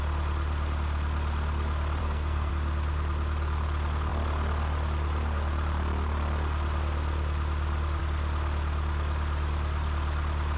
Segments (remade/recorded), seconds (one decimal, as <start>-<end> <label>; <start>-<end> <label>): 0.0-2.0 recorded; 2.0-2.5 remade; 2.5-10.6 recorded